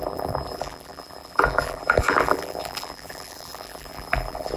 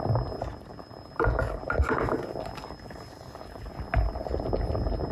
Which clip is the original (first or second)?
second